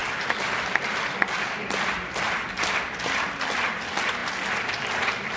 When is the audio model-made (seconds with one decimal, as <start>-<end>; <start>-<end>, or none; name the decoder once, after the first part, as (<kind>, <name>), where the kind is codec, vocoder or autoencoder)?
none